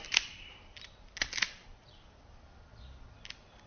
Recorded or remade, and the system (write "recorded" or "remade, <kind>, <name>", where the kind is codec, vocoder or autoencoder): recorded